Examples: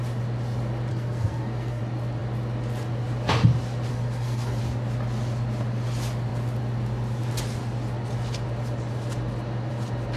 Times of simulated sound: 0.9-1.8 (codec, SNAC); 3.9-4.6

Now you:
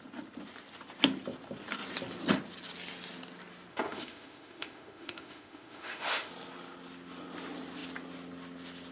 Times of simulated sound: 3.7-6.3 (autoencoder, DAC-VAE)

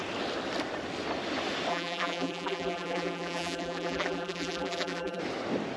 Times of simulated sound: 1.7-5.2 (vocoder, BigVGAN v2)

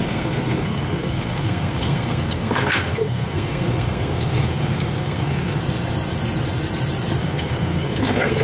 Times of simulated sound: 0.0-5.6 (codec, SNAC); 7.2-8.4

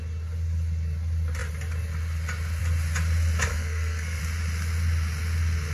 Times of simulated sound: 3.5-4.2 (codec, SNAC)

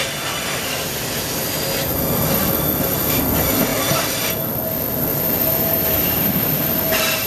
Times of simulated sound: 5.1-7.3 (vocoder, BigVGAN v2)

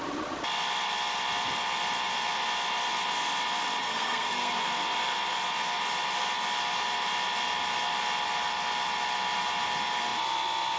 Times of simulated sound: 3.8-4.5 (codec, SNAC)